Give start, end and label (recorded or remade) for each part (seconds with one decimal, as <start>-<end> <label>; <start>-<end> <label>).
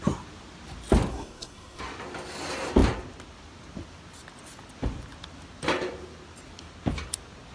0.0-1.1 recorded; 1.1-1.8 remade; 1.8-7.5 recorded